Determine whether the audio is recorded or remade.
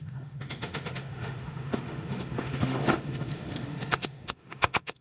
remade